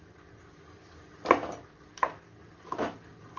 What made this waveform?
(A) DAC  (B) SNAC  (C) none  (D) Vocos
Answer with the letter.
C